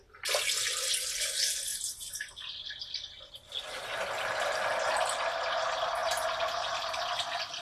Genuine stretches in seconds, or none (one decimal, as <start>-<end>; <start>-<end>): 0.0-1.7; 2.2-7.6